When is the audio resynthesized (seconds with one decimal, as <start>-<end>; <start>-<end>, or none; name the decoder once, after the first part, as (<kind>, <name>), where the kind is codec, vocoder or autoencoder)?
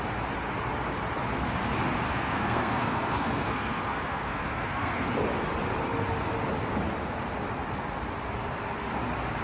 2.1-5.1 (codec, SNAC)